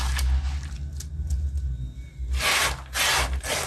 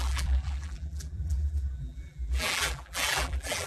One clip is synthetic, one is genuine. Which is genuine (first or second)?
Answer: first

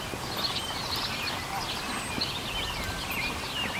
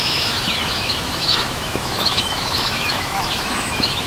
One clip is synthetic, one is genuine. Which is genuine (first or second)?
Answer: first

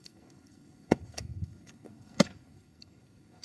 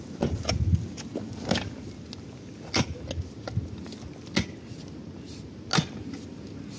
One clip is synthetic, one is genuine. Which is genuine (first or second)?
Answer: second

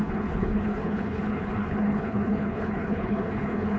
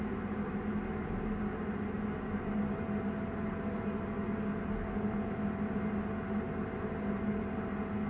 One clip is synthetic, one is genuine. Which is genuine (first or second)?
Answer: second